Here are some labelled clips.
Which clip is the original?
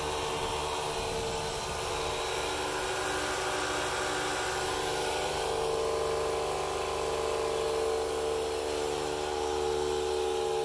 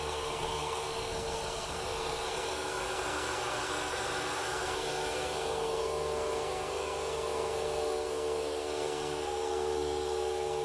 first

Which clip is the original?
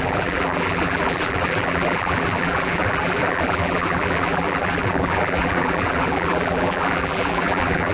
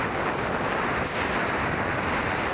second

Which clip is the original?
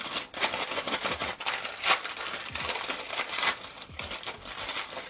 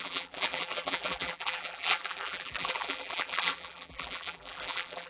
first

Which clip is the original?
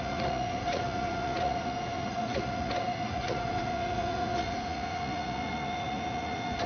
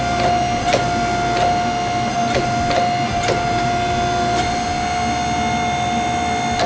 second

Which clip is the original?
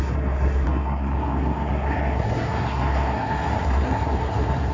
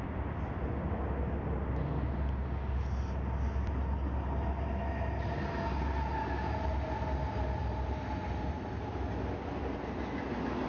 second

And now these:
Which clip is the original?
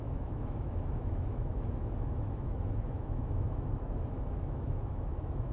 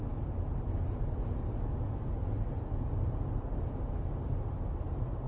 second